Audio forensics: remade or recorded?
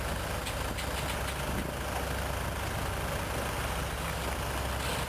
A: recorded